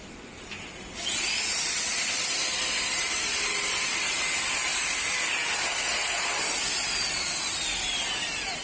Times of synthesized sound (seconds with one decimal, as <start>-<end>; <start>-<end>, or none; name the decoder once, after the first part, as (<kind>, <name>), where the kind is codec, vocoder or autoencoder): 0.0-4.7 (vocoder, BigVGAN v2); 5.6-8.6